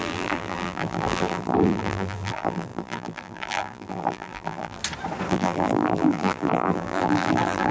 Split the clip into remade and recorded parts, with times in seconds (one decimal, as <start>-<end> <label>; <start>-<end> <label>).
0.0-4.8 remade; 4.8-5.3 recorded; 5.3-7.7 remade